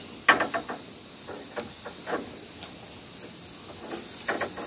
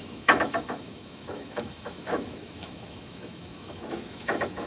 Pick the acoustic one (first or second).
first